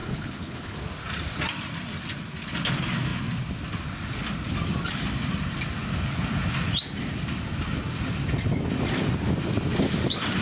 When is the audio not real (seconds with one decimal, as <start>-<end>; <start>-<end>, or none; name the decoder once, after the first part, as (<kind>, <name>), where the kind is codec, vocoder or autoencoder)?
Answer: 0.0-0.8 (codec, HILCodec)